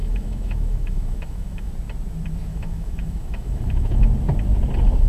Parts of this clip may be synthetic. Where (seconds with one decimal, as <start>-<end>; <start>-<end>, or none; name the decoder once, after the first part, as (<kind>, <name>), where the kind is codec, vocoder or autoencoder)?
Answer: 0.0-1.7 (autoencoder, DAC-VAE); 2.5-4.0